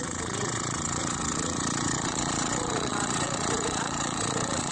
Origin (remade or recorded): remade